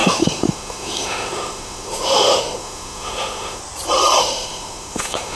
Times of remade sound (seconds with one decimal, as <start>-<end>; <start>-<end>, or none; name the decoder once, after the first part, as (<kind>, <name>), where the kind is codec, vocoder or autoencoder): 0.0-3.6 (autoencoder, DAC-VAE); 4.2-5.4